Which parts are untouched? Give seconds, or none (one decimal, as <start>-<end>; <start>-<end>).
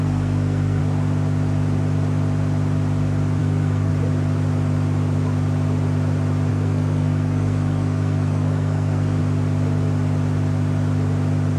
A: 0.8-3.4; 3.9-6.5; 9.2-11.6